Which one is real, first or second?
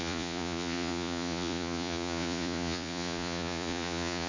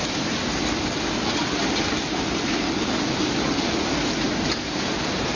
second